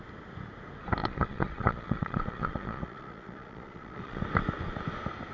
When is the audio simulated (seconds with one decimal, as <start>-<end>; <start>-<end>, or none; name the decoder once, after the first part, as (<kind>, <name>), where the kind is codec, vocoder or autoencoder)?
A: 1.0-4.2 (vocoder, Vocos)